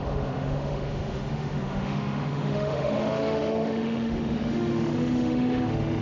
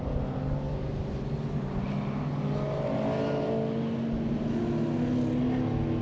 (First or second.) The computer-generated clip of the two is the first